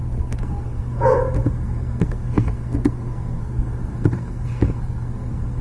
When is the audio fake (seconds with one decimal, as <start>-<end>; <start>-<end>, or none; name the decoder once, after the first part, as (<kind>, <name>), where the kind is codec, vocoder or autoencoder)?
0.0-5.6 (codec, SNAC)